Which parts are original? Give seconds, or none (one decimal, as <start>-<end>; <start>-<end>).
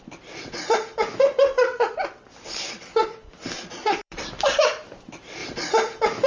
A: none